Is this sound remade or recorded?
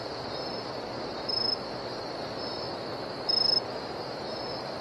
recorded